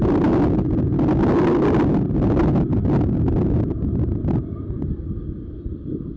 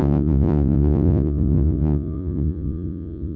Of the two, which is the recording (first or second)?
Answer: first